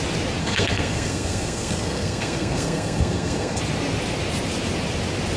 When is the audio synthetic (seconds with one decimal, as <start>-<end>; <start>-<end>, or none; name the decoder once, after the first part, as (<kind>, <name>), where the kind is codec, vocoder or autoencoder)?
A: 0.4-3.6 (codec, SNAC)